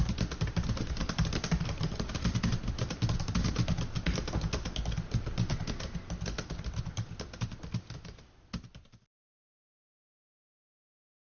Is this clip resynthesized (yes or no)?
no